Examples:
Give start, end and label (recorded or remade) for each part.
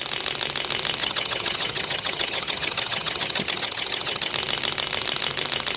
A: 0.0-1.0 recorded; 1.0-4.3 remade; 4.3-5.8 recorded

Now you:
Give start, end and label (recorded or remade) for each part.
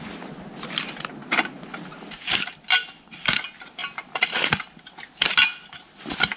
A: 0.0-6.4 recorded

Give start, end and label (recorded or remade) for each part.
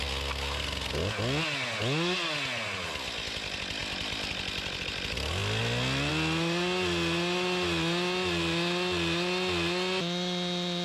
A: 0.0-10.8 recorded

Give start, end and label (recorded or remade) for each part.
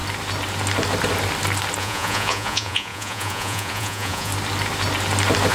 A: 0.0-1.8 recorded; 1.8-4.3 remade; 4.3-5.5 recorded